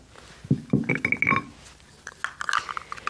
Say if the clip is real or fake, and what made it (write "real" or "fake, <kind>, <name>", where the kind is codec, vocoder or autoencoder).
real